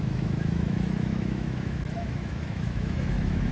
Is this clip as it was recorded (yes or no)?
no